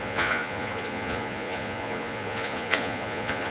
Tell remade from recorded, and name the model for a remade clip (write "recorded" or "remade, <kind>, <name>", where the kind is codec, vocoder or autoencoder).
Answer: remade, vocoder, Vocos